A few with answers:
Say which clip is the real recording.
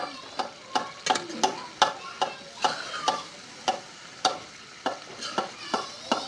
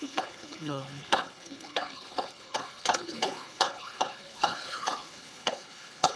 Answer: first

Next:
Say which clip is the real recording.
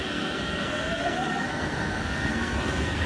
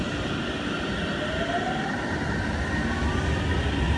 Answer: second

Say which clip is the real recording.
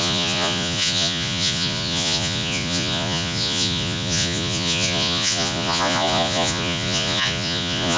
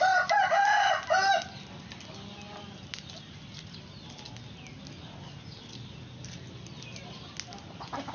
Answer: second